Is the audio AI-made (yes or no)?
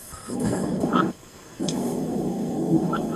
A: yes